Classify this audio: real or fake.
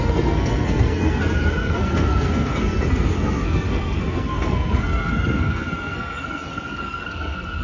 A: fake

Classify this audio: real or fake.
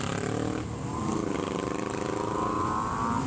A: real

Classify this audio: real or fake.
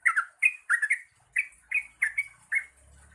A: real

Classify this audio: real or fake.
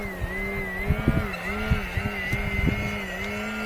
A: real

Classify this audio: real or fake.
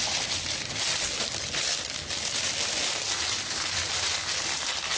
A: real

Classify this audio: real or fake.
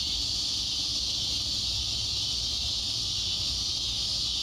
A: real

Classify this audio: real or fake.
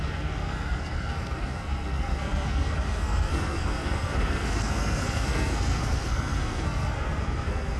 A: fake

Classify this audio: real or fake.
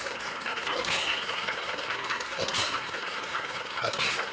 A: fake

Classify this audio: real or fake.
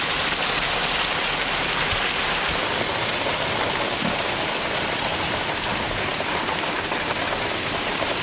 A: real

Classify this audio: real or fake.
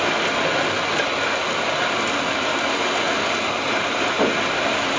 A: real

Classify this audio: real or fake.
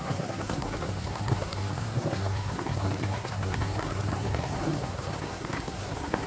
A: fake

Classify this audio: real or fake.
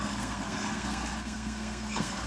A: fake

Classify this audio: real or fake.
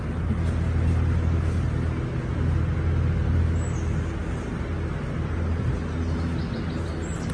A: real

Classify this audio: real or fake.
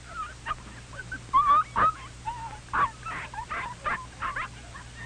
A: real